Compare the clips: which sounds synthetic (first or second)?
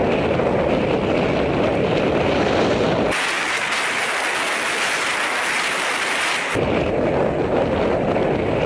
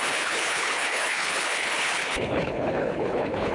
second